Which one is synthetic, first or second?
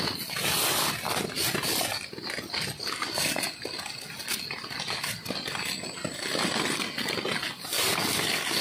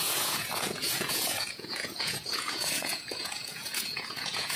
second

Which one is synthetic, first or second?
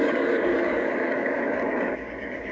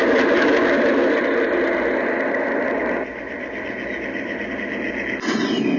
first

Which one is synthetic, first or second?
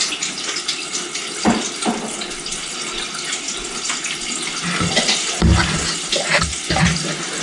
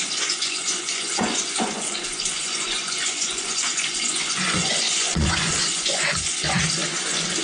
second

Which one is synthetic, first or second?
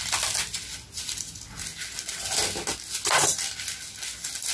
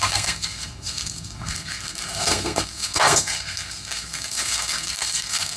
second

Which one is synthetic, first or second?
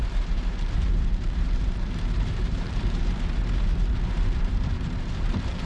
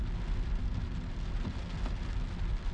first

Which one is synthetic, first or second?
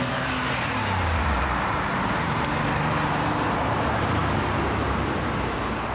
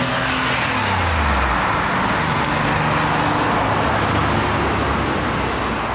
first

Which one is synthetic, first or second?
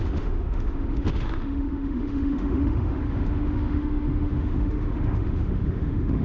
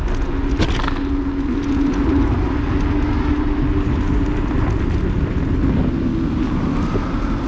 first